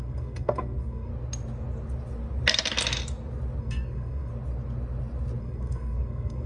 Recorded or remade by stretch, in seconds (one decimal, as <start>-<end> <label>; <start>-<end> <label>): 0.0-1.1 remade; 1.1-3.6 recorded; 3.6-4.3 remade; 4.3-5.4 recorded; 5.4-6.5 remade